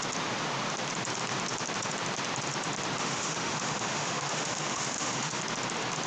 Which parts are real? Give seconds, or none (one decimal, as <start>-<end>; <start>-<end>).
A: 0.0-3.0; 5.4-6.1